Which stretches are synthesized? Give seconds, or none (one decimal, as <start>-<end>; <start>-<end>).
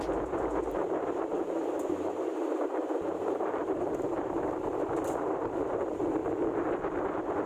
0.0-6.2